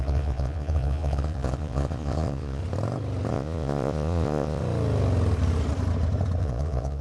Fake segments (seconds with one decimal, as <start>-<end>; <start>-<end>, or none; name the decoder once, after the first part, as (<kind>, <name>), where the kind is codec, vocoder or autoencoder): 0.0-2.6 (vocoder, Vocos); 3.3-4.6; 6.4-7.0